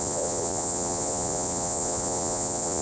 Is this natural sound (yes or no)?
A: no